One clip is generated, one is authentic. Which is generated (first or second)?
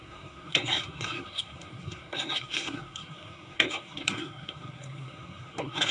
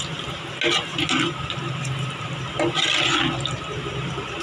first